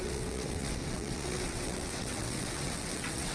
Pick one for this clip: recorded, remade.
remade